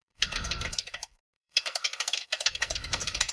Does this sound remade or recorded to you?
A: remade